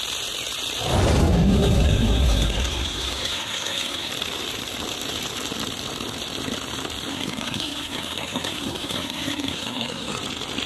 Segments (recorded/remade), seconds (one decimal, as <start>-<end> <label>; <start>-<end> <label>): 0.0-1.2 recorded; 1.2-4.1 remade; 4.1-7.1 recorded; 7.1-10.2 remade; 10.2-10.7 recorded